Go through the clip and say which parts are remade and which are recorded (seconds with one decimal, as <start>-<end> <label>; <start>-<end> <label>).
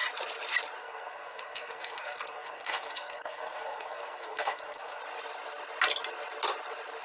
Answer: 0.0-0.8 recorded; 0.8-5.0 remade; 5.0-7.0 recorded